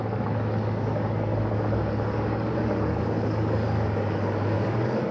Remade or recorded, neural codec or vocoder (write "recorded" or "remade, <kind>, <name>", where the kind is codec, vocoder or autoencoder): remade, codec, DAC